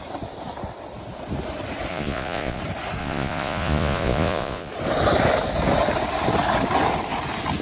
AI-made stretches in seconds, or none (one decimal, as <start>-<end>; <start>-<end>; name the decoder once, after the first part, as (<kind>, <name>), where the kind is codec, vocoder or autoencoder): 1.9-2.6 (vocoder, Vocos); 3.0-4.7